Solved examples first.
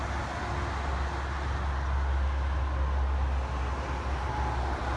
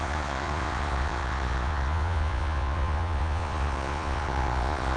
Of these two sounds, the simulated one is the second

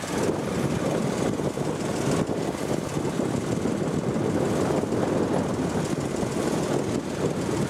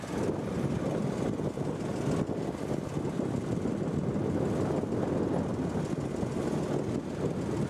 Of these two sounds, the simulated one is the first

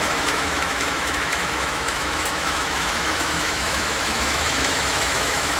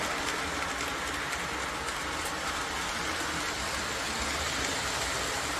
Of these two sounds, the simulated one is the first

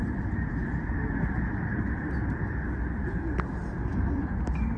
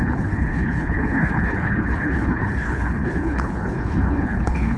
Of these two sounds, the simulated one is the second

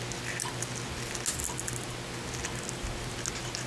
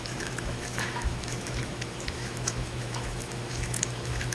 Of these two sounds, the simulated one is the second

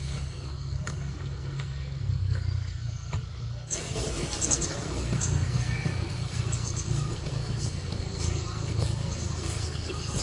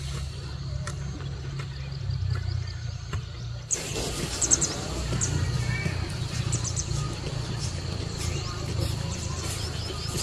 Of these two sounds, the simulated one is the first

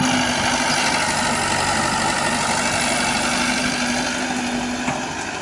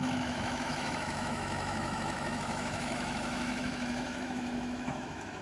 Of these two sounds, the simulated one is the second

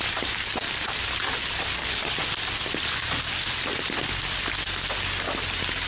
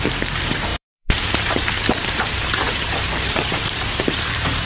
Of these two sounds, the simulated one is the second